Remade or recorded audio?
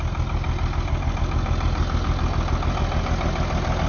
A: recorded